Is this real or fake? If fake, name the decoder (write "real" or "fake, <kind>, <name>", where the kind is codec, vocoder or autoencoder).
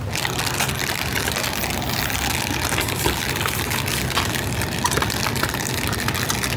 real